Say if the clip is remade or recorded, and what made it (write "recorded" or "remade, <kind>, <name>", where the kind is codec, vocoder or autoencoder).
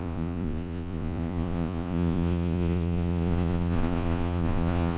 remade, vocoder, Vocos